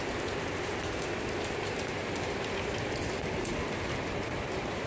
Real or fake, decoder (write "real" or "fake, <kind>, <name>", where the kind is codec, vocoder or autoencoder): real